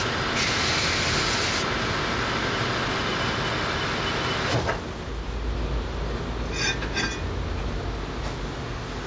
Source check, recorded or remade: recorded